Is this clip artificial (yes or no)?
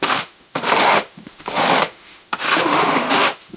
yes